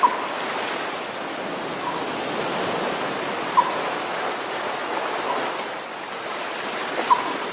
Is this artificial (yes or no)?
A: no